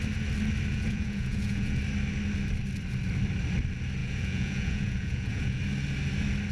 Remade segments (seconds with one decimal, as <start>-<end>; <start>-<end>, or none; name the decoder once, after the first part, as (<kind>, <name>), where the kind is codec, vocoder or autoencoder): 0.7-1.8 (vocoder, Vocos); 4.0-5.6